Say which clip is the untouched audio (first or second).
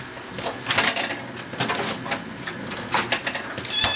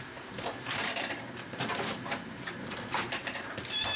first